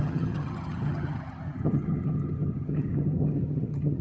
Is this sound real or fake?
fake